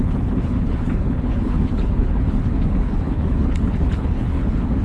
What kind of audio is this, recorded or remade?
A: remade